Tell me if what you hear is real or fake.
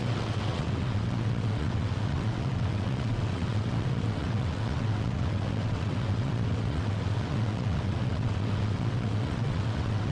fake